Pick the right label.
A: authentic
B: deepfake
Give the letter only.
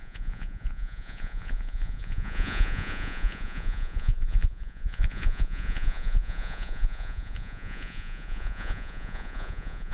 B